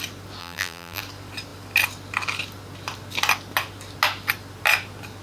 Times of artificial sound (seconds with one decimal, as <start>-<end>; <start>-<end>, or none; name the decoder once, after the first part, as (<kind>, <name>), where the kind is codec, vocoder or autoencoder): 0.4-1.0 (vocoder, BigVGAN v2)